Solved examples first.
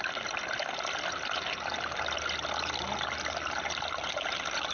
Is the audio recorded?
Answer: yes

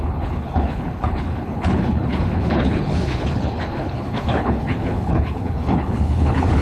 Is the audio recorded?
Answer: no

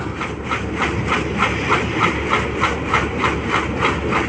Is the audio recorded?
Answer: yes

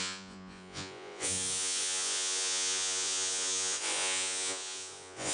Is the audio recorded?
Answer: no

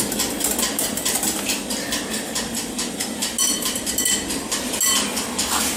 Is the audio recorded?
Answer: yes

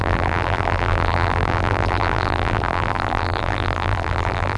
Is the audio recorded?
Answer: no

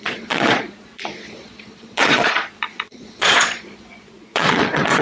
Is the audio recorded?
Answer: no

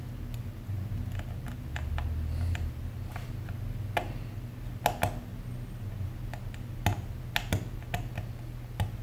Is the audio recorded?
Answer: yes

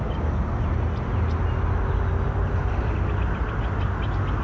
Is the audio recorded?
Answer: yes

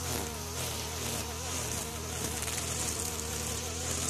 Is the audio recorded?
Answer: no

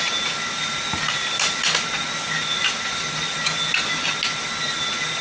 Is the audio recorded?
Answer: yes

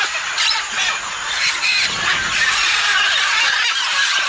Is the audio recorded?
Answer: yes